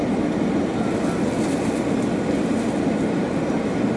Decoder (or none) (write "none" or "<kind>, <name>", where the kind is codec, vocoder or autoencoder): none